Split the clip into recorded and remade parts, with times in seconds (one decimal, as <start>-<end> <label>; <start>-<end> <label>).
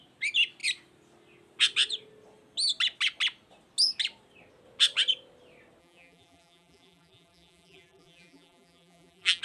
0.0-5.8 recorded; 5.8-9.4 remade